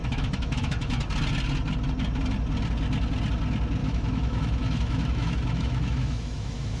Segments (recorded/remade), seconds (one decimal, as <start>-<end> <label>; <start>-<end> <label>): 0.0-1.0 remade; 1.0-3.8 recorded; 3.8-6.8 remade